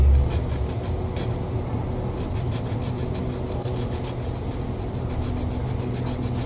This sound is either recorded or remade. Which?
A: recorded